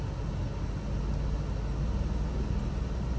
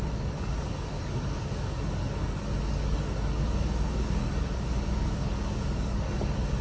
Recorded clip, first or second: first